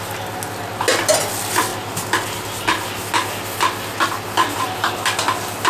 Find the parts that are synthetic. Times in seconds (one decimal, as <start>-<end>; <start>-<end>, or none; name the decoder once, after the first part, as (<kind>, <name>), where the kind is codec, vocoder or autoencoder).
none